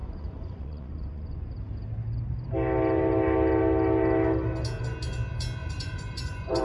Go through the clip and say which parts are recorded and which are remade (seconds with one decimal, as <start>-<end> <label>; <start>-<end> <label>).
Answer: 0.0-1.5 remade; 1.5-5.6 recorded; 5.6-6.6 remade